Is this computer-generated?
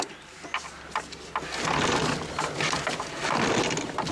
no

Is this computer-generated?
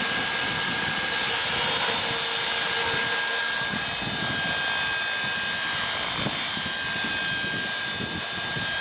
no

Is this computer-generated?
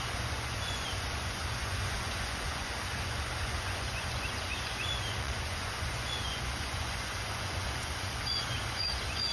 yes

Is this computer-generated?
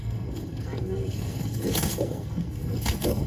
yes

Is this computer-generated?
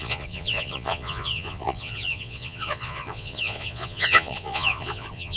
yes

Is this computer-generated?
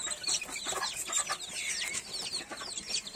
no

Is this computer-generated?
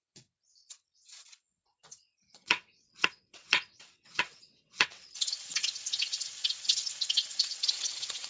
yes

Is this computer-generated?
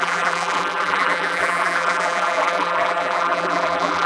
yes